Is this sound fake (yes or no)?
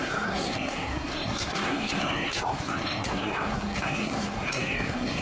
yes